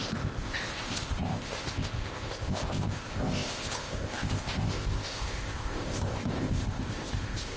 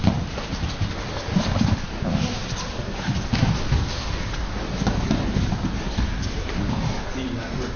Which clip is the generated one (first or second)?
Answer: first